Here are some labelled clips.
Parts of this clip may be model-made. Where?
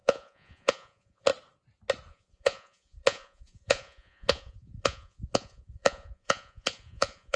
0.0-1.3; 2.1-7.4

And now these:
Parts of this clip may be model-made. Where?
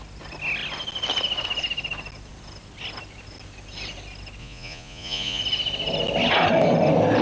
4.4-5.4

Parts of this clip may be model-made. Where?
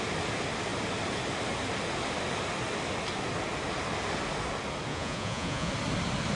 4.9-5.7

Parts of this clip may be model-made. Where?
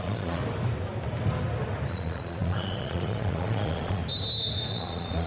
0.0-0.4; 1.9-4.0; 4.7-5.3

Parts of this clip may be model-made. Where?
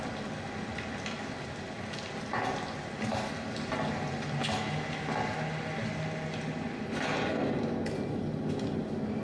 none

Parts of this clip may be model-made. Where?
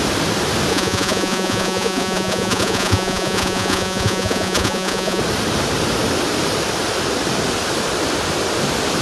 0.7-5.2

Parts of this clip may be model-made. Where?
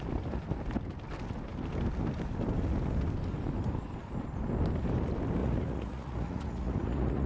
5.4-7.3